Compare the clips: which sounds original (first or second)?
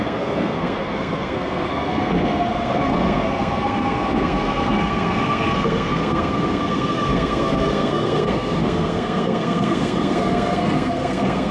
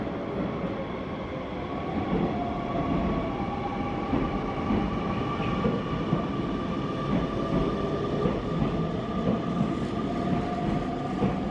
second